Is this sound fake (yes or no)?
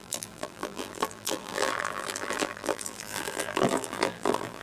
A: yes